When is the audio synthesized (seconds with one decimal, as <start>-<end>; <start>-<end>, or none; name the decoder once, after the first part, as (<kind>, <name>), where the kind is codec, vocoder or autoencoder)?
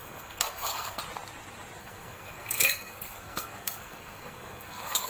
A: 0.0-1.0 (codec, SNAC); 1.8-5.1